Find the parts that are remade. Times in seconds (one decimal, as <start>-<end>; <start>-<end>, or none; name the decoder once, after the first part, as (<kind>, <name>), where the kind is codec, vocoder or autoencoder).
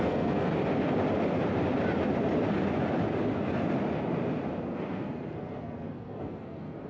0.0-0.5 (codec, SNAC); 4.6-6.9